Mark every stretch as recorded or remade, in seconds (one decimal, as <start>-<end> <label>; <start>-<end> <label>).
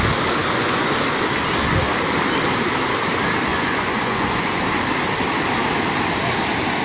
0.0-0.4 recorded; 0.4-0.9 remade; 0.9-3.5 recorded; 3.5-4.6 remade; 4.6-6.8 recorded